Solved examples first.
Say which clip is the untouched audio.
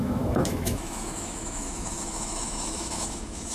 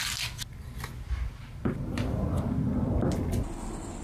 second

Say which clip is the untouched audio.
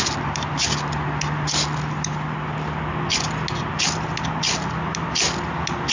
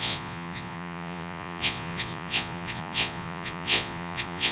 first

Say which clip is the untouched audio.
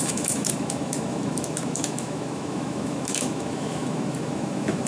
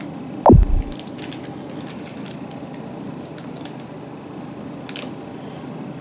second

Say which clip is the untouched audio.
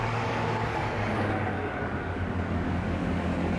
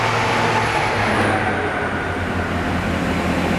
second